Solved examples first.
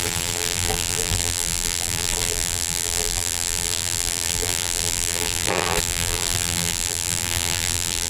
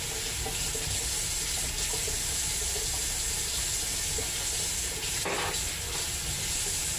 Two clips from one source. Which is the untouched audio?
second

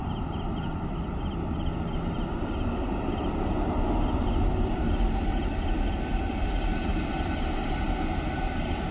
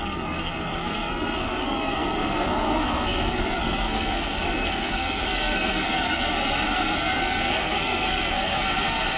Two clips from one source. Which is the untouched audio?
first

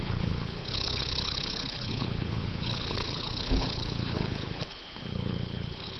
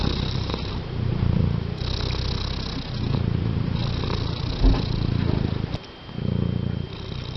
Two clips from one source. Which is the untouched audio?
second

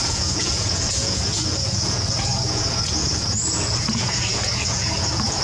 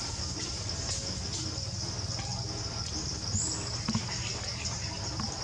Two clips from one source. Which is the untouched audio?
second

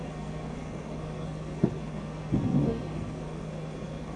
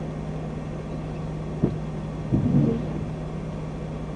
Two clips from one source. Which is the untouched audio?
second